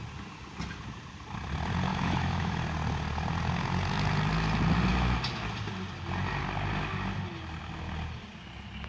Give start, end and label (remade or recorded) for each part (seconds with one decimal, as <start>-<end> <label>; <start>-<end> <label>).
0.0-1.9 recorded; 1.9-2.6 remade; 2.6-8.9 recorded